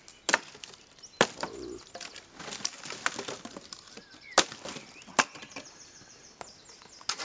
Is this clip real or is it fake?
real